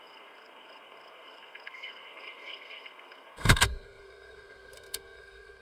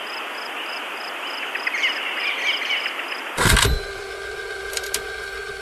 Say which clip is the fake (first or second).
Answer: first